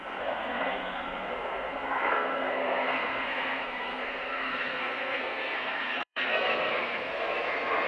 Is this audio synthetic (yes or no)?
yes